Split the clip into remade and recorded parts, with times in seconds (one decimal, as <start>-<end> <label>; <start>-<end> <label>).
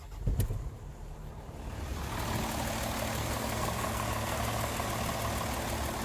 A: 0.0-3.2 recorded; 3.2-4.9 remade; 4.9-6.0 recorded